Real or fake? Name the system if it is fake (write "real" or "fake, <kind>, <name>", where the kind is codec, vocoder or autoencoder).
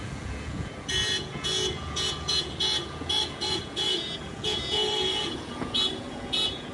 fake, vocoder, Vocos